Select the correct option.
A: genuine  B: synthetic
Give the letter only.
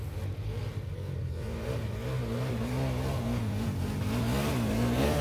A